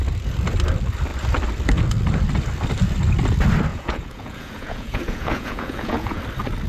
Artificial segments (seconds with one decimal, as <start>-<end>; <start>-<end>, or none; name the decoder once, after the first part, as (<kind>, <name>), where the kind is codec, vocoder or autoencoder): 3.7-6.2 (vocoder, Vocos)